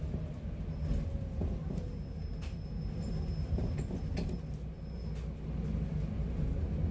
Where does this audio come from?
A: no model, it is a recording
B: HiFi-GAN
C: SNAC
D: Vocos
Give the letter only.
A